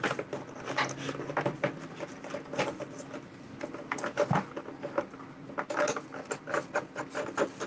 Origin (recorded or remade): recorded